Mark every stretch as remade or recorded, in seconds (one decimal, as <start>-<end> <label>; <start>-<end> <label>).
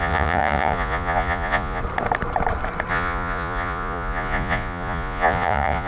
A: 0.0-1.8 remade; 1.8-2.9 recorded; 2.9-5.9 remade